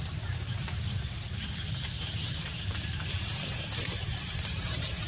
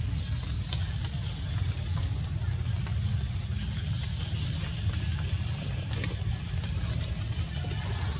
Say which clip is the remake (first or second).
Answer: first